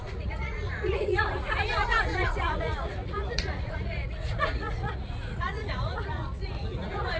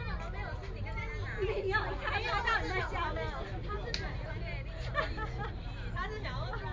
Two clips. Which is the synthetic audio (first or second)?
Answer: first